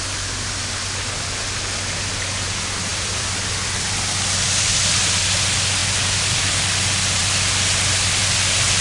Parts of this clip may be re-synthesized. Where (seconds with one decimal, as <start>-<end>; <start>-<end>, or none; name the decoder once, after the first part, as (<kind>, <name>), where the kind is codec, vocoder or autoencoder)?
2.9-4.9 (vocoder, BigVGAN v2)